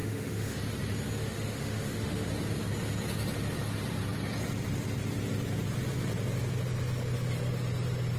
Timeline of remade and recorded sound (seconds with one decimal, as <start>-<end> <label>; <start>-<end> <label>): 0.0-0.6 remade; 0.6-1.2 recorded; 1.2-2.3 remade; 2.3-8.2 recorded